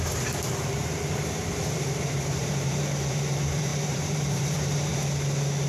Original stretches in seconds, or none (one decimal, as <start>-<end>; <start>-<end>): 4.9-5.7